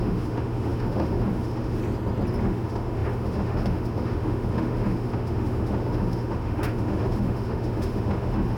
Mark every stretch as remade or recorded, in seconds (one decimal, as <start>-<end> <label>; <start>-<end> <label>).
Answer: 0.0-1.8 remade; 1.8-2.4 recorded; 2.4-8.6 remade